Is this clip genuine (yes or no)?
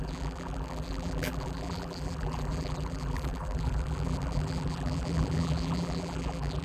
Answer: no